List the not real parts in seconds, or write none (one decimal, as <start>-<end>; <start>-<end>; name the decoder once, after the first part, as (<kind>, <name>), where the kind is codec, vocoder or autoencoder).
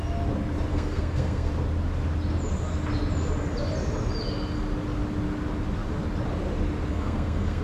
0.7-1.5 (codec, SNAC); 6.9-7.6